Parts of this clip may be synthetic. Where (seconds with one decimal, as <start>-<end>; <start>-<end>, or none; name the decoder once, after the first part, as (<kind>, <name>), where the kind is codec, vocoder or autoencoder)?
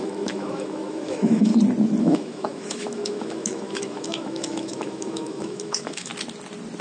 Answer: 0.0-1.5 (autoencoder, DAC-VAE); 2.0-6.1